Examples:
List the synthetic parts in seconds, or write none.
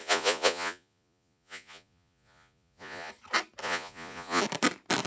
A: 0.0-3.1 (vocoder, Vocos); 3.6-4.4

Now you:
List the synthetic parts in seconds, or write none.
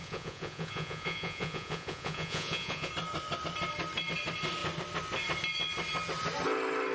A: 0.0-2.9 (vocoder, Vocos)